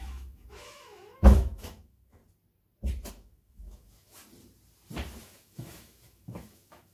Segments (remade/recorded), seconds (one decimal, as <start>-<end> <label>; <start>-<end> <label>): 0.0-2.2 remade; 2.2-3.1 recorded; 3.1-4.2 remade; 4.2-5.2 recorded; 5.2-6.9 remade

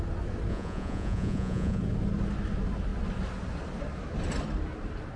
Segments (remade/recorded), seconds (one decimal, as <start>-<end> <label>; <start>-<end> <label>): 0.0-0.5 recorded; 0.5-1.8 remade; 1.8-5.2 recorded

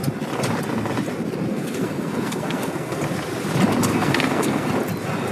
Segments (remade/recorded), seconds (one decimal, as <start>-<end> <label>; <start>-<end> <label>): 0.0-1.5 recorded; 1.5-3.0 remade; 3.0-3.9 recorded; 3.9-4.7 remade; 4.7-5.3 recorded

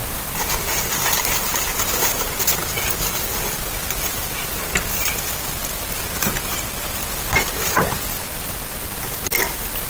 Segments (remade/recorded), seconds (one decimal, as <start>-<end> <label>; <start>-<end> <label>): 0.0-1.7 recorded; 1.7-2.4 remade; 2.4-9.9 recorded